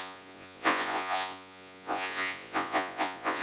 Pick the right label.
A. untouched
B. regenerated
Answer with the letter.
B